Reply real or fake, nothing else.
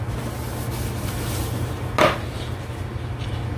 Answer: real